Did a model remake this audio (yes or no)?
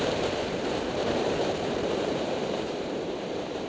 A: yes